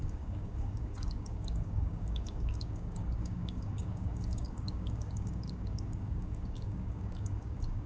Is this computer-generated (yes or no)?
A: yes